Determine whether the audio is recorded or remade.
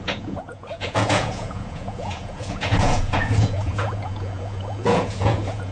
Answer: remade